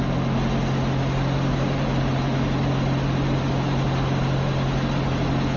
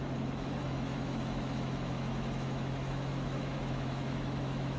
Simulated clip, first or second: second